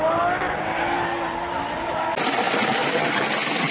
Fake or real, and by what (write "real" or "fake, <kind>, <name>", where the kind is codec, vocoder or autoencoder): real